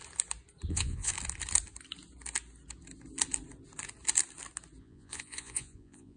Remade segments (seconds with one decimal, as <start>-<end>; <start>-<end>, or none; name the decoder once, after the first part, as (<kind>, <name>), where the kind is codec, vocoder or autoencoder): 0.7-1.1 (vocoder, Vocos); 4.8-6.2